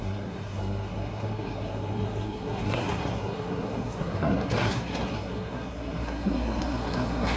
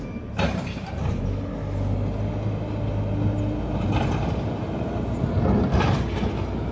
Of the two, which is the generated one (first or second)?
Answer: first